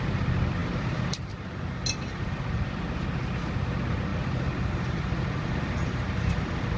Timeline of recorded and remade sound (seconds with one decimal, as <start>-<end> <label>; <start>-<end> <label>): 0.0-0.6 recorded; 0.6-2.6 remade; 2.6-4.1 recorded; 4.1-6.8 remade